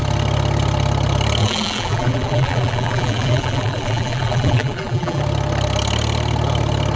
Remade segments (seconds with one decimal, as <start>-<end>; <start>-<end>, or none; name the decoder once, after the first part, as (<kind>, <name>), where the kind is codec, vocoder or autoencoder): 1.4-5.2 (vocoder, BigVGAN v2)

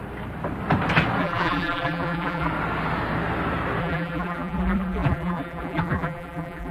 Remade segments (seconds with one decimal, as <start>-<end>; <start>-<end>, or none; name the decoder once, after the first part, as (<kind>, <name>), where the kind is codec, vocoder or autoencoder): 1.2-2.5 (vocoder, BigVGAN v2); 3.8-6.7

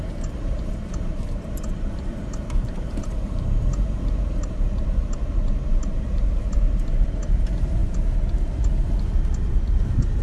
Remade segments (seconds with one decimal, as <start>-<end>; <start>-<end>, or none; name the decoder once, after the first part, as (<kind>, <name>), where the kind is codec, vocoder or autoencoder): 0.0-7.8 (vocoder, BigVGAN v2); 9.4-10.2

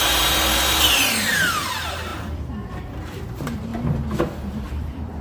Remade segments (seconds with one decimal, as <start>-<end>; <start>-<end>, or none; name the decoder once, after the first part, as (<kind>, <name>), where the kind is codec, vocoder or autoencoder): 0.0-3.7 (vocoder, BigVGAN v2); 4.2-5.2

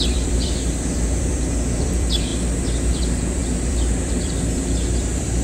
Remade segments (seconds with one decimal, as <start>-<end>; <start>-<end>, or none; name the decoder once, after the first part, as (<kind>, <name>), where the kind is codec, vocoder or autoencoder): 0.0-2.3 (vocoder, BigVGAN v2); 2.9-5.4

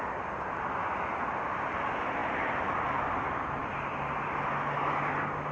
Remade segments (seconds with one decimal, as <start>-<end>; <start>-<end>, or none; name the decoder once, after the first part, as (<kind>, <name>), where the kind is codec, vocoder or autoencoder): 2.2-3.0 (vocoder, BigVGAN v2)